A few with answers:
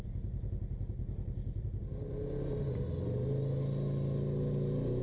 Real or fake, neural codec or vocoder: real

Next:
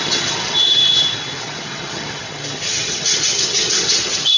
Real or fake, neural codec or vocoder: fake, vocoder, HiFi-GAN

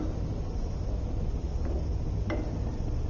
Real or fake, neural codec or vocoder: real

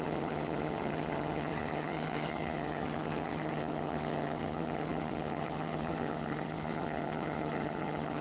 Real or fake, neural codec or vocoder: fake, vocoder, HiFi-GAN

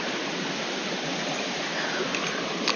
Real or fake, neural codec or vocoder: real